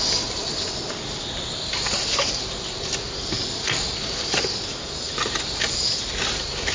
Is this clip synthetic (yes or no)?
no